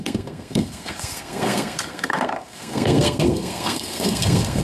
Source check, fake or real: fake